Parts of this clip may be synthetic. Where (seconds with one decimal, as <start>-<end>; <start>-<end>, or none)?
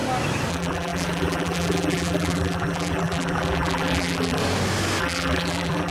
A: 0.5-4.4; 5.0-5.9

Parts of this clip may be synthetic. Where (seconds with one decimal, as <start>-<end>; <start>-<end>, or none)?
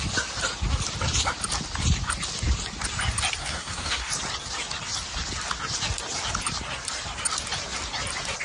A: 3.4-4.1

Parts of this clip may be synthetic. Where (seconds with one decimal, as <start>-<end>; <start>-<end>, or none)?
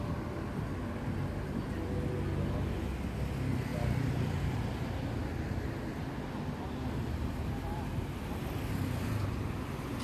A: 3.7-5.2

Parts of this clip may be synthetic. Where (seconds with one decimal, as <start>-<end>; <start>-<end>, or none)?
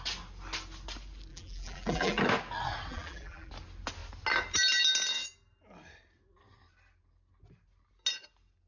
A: 1.3-2.2; 2.9-3.5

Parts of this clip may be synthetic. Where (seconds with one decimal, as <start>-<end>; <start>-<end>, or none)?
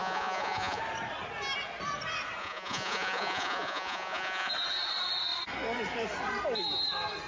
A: 0.0-0.8; 2.4-4.5